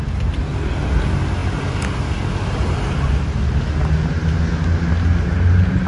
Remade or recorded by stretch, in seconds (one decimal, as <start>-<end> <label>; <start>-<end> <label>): 0.0-5.9 recorded